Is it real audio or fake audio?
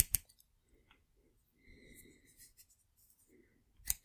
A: real